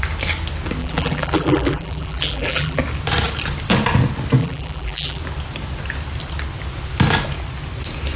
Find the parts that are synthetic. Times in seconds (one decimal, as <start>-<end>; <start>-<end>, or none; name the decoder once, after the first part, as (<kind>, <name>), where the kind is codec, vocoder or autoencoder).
0.8-2.8 (vocoder, BigVGAN v2); 4.4-5.2